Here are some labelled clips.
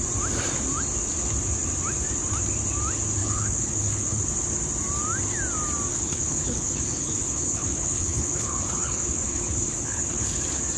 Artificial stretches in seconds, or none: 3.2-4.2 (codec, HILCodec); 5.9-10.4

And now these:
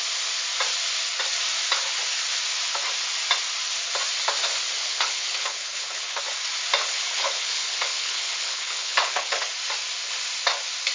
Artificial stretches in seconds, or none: 4.8-6.2 (codec, HILCodec); 6.8-9.5

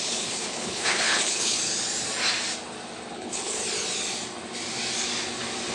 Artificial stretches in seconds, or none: 0.0-1.6 (codec, HILCodec); 3.1-3.6